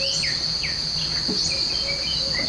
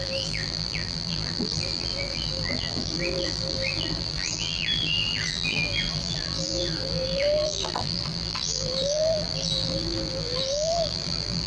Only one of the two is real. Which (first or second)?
first